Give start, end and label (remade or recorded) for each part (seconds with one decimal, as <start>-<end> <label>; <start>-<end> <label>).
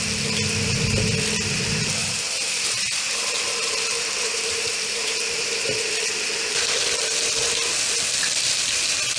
0.0-2.0 recorded; 2.0-5.9 remade; 5.9-9.2 recorded